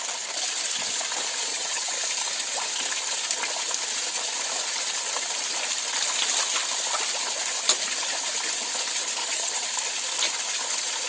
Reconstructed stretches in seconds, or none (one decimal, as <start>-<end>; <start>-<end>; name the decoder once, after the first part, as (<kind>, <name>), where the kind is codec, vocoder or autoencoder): 1.5-2.0 (vocoder, HiFi-GAN); 9.2-9.7